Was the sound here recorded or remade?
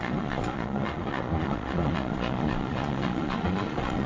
remade